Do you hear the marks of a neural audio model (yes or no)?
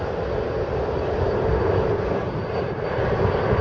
no